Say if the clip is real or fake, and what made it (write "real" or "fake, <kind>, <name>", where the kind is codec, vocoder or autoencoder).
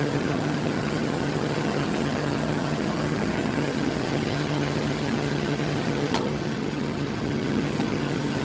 fake, vocoder, HiFi-GAN